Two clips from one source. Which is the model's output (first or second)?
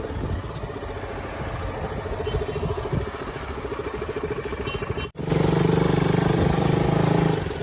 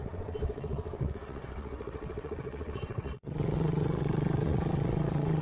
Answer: second